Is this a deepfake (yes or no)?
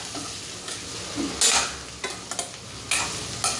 no